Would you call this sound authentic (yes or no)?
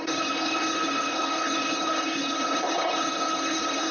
no